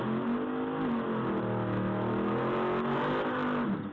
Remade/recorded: recorded